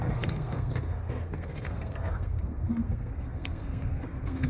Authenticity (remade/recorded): remade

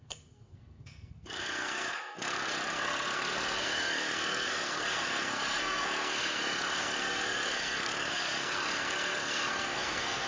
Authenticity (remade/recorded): remade